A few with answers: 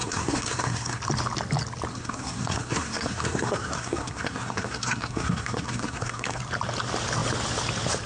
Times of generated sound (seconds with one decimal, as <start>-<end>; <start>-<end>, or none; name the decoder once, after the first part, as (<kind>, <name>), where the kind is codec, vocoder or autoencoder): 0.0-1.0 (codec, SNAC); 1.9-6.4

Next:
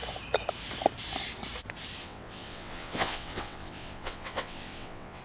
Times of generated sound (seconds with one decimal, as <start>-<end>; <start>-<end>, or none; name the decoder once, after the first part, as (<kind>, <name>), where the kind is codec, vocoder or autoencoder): 2.0-5.2 (vocoder, WaveNeXt)

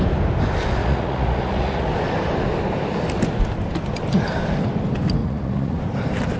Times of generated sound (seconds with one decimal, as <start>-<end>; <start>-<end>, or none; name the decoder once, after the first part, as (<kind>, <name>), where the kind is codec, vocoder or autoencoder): 0.8-1.9 (vocoder, Vocos); 5.2-5.8